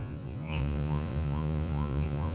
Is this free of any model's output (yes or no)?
no